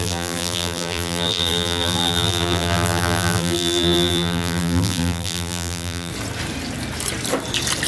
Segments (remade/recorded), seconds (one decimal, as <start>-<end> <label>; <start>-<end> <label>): 0.0-6.1 remade; 6.1-7.9 recorded